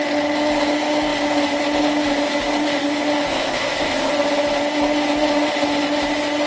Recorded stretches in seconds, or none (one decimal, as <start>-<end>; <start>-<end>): 0.0-3.3; 4.1-6.5